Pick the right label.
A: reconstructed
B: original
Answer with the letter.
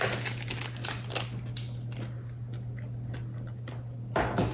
B